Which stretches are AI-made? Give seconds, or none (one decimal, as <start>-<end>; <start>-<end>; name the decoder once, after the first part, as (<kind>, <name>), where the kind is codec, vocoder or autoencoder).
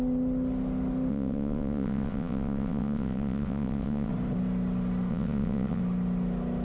1.1-4.1 (vocoder, WaveNeXt); 5.1-5.8